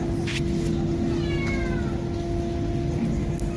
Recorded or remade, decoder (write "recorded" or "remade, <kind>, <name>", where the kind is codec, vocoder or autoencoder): recorded